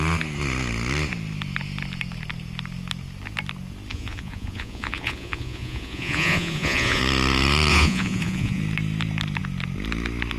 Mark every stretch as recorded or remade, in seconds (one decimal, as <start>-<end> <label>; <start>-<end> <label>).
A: 0.0-3.9 recorded; 3.9-7.0 remade; 7.0-7.7 recorded; 7.7-8.6 remade; 8.6-10.4 recorded